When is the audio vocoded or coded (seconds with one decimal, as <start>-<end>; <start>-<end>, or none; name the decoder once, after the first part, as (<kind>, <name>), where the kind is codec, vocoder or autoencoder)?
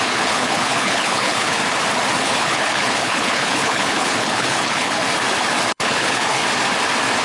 0.0-1.6 (codec, HILCodec); 2.2-5.0; 5.7-6.4